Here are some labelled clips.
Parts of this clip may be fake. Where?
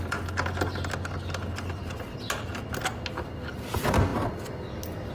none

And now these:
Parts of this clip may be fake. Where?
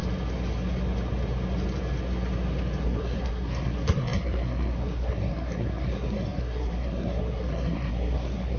2.8-8.6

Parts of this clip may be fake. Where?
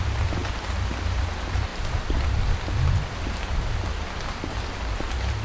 none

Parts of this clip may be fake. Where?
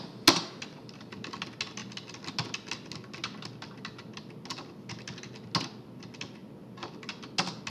none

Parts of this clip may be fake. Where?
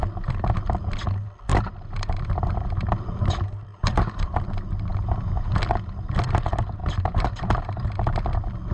1.5-3.0; 3.7-4.4; 4.9-6.2; 6.8-8.2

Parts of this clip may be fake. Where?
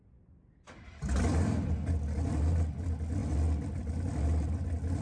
none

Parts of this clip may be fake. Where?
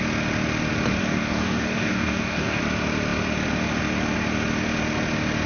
1.0-2.6